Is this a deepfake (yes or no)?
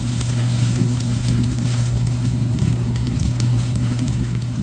yes